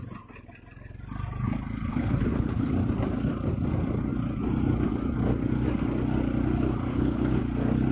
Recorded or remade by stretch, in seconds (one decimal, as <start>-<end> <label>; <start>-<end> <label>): 0.0-1.9 recorded; 1.9-2.7 remade; 2.7-6.9 recorded; 6.9-7.4 remade; 7.4-7.9 recorded